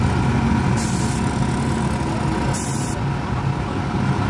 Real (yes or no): yes